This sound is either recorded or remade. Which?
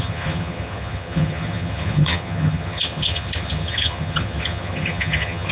remade